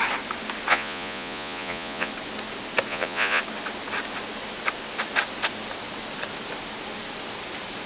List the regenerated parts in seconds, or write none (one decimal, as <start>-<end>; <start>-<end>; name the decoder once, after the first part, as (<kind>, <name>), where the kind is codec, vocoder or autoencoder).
0.7-2.1 (vocoder, Vocos); 2.9-3.4